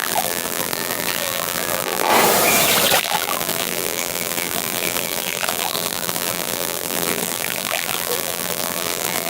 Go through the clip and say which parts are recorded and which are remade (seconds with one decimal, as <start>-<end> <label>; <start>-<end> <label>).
0.0-2.1 remade; 2.1-3.0 recorded; 3.0-9.3 remade